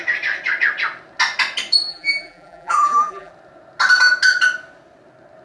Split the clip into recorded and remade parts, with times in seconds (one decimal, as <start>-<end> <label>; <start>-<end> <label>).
0.0-1.9 recorded; 1.9-3.3 remade; 3.3-5.4 recorded